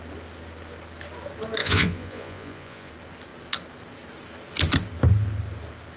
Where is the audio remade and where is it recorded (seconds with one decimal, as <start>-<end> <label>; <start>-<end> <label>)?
0.0-1.6 recorded; 1.6-2.9 remade; 2.9-6.0 recorded

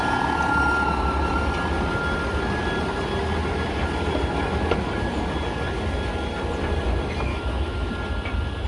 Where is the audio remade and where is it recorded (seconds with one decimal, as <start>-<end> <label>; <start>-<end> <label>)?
0.0-7.3 recorded; 7.3-7.9 remade; 7.9-8.7 recorded

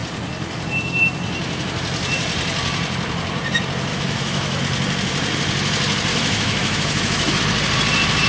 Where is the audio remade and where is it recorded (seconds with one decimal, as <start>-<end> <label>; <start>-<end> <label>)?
0.0-3.9 recorded; 3.9-4.6 remade; 4.6-6.1 recorded; 6.1-7.4 remade; 7.4-8.3 recorded

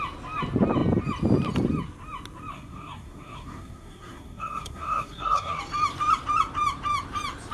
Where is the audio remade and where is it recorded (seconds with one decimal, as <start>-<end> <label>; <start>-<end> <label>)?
0.0-2.5 recorded; 2.5-5.6 remade; 5.6-7.5 recorded

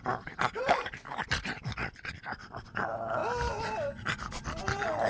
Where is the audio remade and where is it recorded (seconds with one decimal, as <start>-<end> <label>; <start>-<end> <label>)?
0.0-5.1 recorded

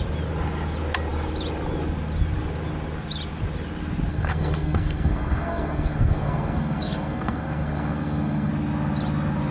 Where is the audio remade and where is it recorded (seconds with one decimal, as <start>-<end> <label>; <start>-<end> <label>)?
0.0-4.1 recorded; 4.1-8.5 remade; 8.5-9.5 recorded

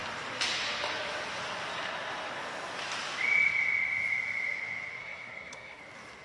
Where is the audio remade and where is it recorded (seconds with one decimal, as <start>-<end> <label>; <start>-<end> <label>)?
0.0-5.0 recorded; 5.0-5.8 remade; 5.8-6.2 recorded

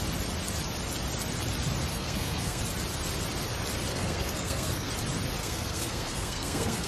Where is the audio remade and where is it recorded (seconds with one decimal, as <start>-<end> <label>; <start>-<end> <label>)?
0.0-1.9 recorded; 1.9-2.6 remade; 2.6-3.9 recorded; 3.9-4.9 remade; 4.9-5.4 recorded; 5.4-6.9 remade